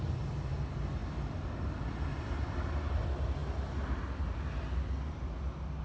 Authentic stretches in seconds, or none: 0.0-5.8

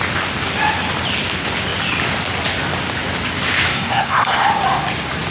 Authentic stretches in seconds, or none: 0.0-3.7; 4.5-5.3

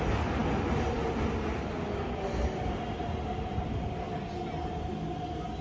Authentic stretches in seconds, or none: 0.0-5.6